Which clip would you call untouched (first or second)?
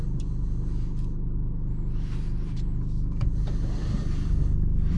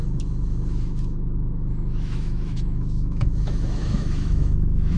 first